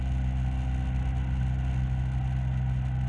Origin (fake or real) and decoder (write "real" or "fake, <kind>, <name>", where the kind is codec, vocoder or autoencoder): real